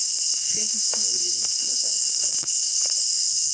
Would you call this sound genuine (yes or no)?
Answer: no